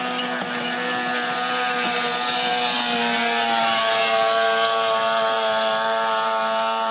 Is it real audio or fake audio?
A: real